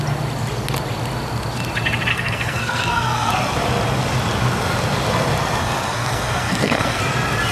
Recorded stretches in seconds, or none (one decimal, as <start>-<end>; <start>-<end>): 0.0-2.1; 3.3-5.6; 7.0-7.5